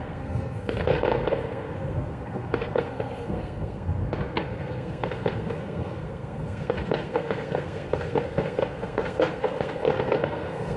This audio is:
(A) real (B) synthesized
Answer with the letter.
B